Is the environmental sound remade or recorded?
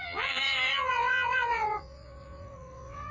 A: remade